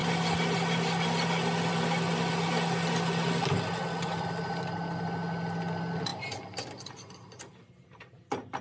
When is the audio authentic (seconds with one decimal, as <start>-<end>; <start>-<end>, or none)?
0.0-8.6